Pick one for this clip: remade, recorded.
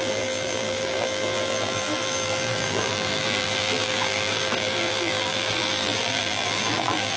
remade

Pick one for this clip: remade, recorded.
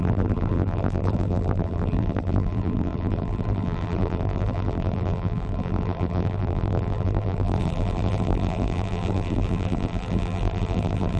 remade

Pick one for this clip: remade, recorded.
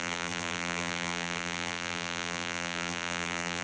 remade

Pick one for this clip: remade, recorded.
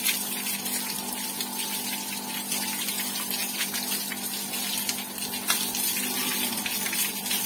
recorded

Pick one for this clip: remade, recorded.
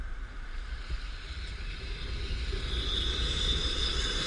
remade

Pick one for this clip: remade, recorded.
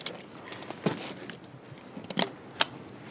recorded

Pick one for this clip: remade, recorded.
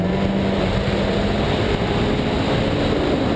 recorded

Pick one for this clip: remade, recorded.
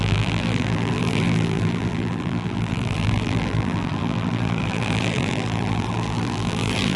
remade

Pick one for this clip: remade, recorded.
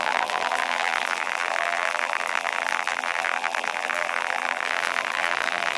remade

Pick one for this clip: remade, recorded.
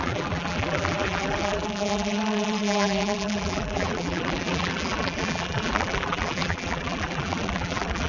remade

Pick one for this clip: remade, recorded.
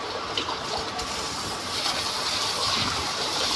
remade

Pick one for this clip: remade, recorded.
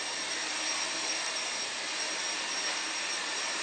remade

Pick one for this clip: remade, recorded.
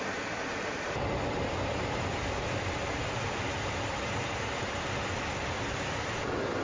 remade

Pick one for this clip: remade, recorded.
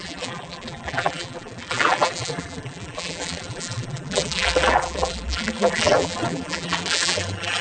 remade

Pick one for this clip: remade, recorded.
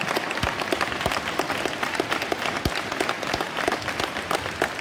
recorded